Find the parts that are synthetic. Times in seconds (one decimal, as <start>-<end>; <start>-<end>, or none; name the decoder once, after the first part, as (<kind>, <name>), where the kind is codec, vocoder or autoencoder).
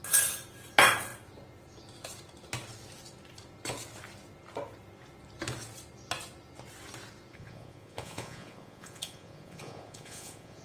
7.3-10.6 (vocoder, Vocos)